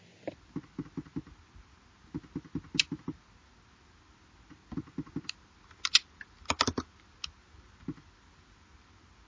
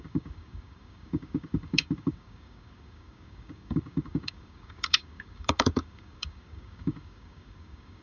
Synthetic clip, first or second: second